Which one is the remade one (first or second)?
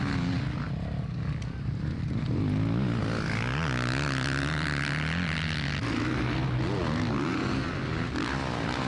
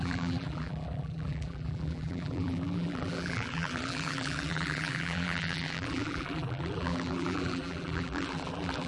second